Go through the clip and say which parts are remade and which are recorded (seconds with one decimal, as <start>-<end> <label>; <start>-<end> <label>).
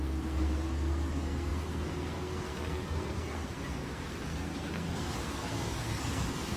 0.0-6.6 remade